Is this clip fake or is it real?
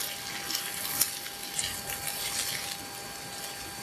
real